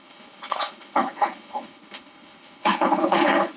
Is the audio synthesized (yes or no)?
yes